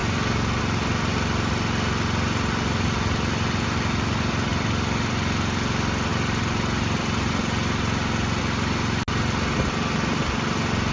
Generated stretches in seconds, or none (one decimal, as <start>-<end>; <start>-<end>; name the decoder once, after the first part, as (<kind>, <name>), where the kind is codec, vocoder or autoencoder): none